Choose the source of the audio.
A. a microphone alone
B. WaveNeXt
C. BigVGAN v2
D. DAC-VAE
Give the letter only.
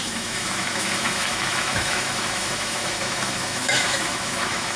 D